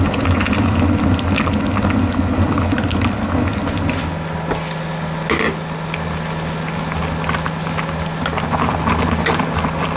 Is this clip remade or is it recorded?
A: recorded